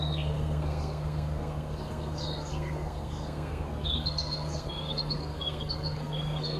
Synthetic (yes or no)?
yes